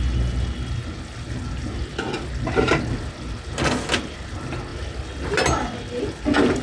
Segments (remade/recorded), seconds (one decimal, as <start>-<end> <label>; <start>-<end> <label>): 0.0-6.6 recorded